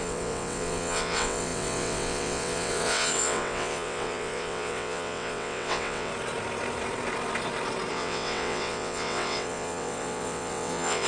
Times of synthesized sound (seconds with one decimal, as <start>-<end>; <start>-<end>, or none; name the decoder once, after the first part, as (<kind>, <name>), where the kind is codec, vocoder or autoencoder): 0.0-6.1 (vocoder, WaveNeXt); 7.9-11.1